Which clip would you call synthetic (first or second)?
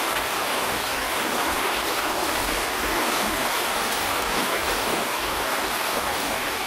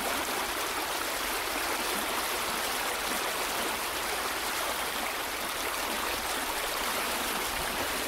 first